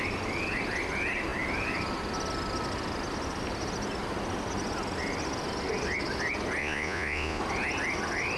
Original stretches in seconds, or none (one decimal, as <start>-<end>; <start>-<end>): 0.0-6.6; 7.4-8.4